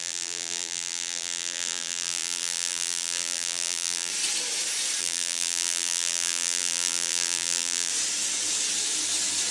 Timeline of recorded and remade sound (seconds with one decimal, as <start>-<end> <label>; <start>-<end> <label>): 0.0-4.1 remade; 4.1-5.0 recorded; 5.0-7.9 remade; 7.9-9.5 recorded